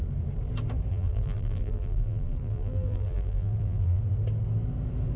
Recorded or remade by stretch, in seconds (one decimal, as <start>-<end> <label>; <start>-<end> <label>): 0.0-0.9 recorded; 0.9-4.0 remade; 4.0-5.2 recorded